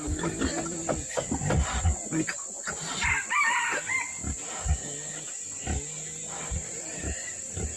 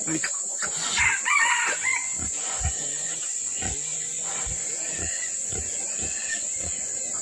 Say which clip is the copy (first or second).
second